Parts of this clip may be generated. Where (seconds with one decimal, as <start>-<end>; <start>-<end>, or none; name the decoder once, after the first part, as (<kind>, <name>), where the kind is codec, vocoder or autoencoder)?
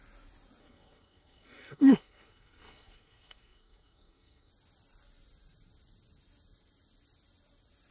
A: 0.6-4.5 (codec, SNAC)